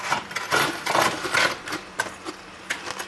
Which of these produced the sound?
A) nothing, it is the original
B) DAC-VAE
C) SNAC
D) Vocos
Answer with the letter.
A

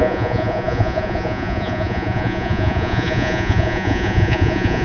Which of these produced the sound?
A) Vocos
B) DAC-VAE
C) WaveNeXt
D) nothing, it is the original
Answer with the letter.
A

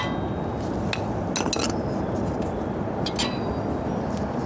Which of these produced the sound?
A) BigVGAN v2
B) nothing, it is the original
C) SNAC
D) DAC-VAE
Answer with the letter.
B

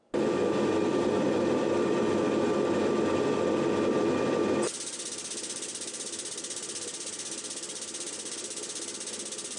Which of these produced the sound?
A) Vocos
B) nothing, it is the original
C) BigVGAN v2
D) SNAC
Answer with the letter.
B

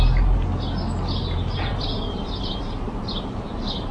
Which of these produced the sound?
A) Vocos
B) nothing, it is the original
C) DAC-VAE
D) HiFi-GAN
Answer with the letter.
B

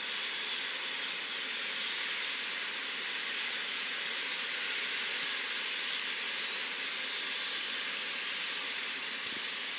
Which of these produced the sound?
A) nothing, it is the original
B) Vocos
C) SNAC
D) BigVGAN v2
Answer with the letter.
A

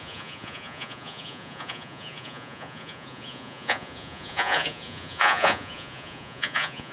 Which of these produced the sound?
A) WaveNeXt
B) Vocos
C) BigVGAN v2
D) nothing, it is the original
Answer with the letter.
B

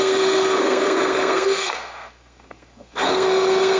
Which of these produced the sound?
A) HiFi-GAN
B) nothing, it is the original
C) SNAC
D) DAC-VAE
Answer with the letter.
C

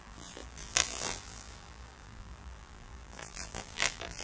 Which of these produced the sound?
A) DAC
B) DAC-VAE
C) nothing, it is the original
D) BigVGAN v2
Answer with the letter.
D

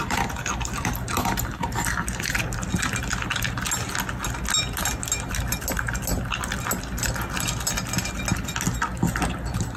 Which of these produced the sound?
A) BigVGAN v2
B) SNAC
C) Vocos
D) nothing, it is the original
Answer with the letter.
D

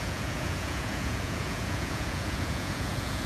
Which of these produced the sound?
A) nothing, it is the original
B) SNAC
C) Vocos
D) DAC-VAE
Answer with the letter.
C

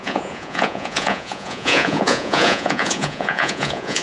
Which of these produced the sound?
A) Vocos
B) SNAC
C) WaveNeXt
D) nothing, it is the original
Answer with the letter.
A